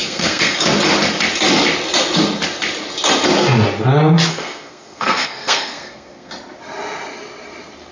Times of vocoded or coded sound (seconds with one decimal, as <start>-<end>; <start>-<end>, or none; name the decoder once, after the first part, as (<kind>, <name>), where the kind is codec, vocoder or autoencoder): 0.0-0.6 (codec, SNAC); 4.3-6.3